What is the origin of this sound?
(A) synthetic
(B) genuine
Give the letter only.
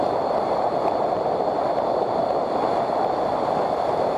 A